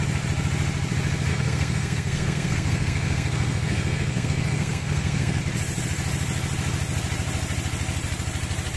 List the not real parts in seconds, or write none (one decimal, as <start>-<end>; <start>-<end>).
1.3-5.4